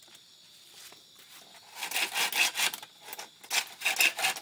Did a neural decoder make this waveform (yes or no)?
no